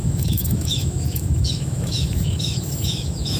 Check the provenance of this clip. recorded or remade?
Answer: remade